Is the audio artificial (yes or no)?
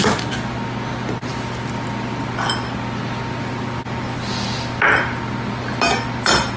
no